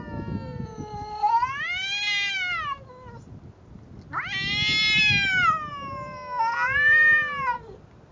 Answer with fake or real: real